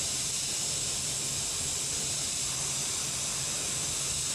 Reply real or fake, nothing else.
real